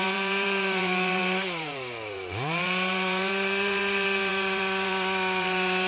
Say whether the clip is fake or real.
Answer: fake